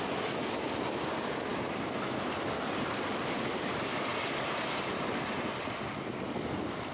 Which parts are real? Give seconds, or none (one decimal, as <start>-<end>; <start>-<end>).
0.0-6.9